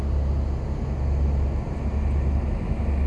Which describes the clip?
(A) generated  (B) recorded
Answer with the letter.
B